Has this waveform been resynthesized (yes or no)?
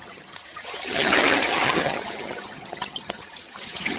yes